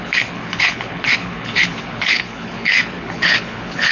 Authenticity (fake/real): fake